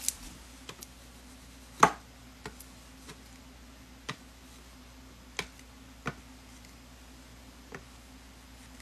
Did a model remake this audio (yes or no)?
no